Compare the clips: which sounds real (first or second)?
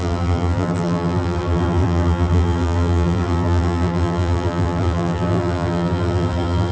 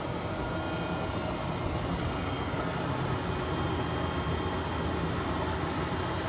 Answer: second